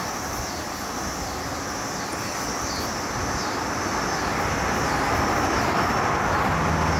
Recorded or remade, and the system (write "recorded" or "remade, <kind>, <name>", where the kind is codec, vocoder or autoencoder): recorded